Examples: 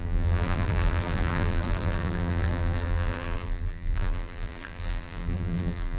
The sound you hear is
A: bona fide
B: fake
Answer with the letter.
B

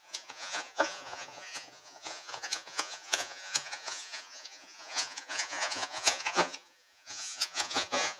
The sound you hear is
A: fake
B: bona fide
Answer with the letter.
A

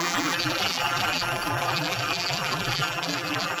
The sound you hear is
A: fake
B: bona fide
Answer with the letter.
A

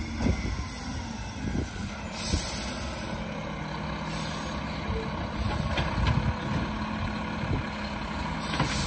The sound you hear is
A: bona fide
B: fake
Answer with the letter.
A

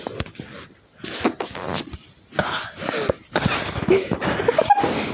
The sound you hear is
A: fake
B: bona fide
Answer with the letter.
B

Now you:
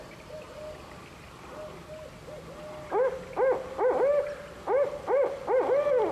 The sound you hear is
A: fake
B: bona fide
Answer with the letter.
B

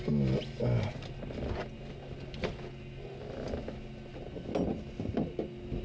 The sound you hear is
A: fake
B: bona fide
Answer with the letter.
B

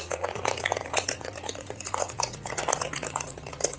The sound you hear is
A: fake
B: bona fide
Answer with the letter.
A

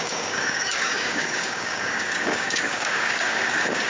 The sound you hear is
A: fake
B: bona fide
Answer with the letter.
A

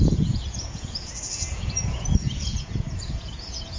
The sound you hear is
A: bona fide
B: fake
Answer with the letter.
B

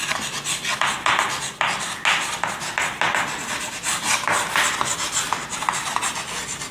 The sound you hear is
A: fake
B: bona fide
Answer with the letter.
B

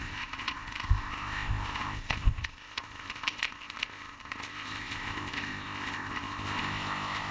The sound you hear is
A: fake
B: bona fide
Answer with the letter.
A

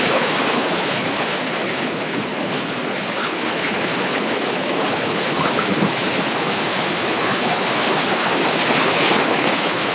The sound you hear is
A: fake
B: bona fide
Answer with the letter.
A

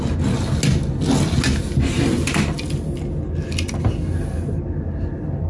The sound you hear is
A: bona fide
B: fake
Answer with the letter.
A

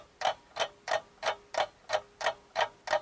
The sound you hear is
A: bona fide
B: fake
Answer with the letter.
A